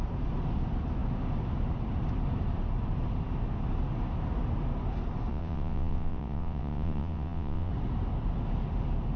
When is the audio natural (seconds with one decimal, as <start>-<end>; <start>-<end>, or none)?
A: 0.0-5.3; 7.7-9.2